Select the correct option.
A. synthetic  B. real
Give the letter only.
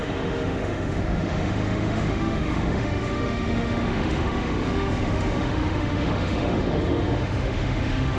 A